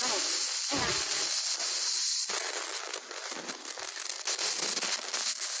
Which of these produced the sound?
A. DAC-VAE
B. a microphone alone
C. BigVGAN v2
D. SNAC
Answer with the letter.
B